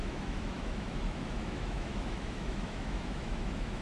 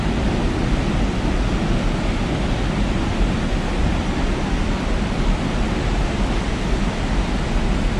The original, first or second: second